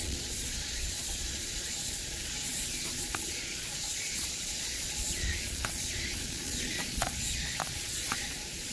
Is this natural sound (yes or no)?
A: no